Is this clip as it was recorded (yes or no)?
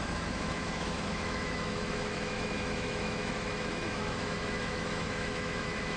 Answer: no